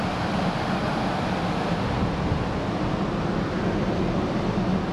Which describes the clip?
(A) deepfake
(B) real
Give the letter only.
B